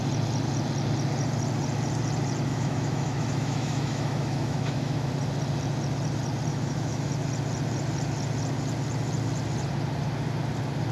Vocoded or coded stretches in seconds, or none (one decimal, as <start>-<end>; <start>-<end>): 2.5-5.1; 6.5-7.1